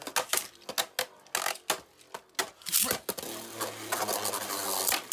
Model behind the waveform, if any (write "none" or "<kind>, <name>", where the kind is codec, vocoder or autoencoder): none